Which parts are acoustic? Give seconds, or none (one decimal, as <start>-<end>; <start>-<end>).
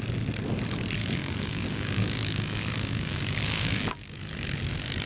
0.0-1.0; 4.1-5.1